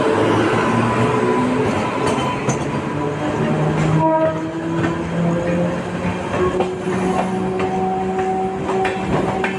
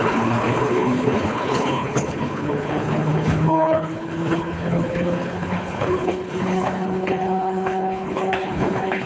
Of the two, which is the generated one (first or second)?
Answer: second